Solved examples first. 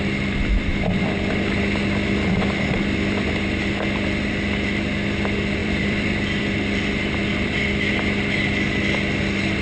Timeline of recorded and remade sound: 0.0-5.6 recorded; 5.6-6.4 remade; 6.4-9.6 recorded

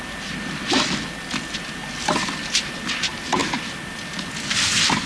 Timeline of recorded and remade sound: 0.0-3.4 recorded; 3.4-3.9 remade; 3.9-5.1 recorded

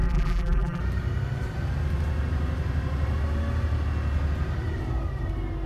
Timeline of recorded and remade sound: 0.0-0.8 remade; 0.8-5.7 recorded